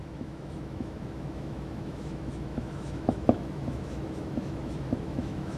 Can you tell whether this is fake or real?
fake